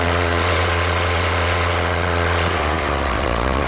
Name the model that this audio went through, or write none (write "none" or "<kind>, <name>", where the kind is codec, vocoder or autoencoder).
vocoder, Vocos